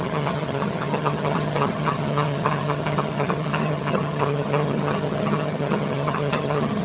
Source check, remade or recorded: remade